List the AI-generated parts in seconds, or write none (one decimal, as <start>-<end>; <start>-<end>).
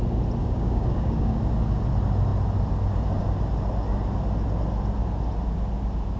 0.4-1.4